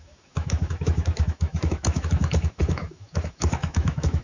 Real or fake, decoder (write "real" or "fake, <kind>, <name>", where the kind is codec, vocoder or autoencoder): fake, autoencoder, DAC-VAE